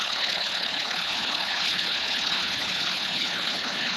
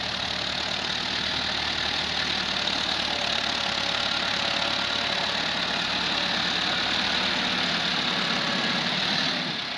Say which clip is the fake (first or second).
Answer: first